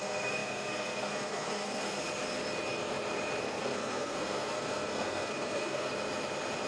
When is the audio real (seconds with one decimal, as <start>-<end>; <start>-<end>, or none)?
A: 2.0-3.4; 5.9-6.7